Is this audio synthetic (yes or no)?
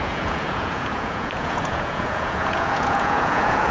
yes